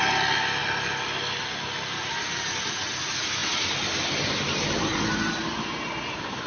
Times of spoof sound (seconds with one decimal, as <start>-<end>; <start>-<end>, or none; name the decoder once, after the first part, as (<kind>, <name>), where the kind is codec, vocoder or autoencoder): 3.4-5.0 (vocoder, BigVGAN v2)